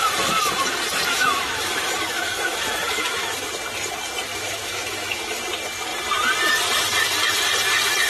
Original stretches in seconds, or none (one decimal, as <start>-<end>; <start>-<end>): 0.0-1.1; 3.5-4.3; 5.4-8.1